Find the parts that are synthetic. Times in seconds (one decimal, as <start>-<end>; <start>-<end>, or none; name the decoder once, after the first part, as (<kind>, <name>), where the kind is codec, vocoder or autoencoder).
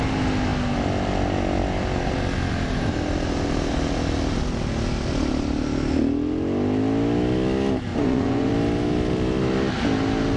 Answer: 7.9-8.5 (vocoder, Vocos)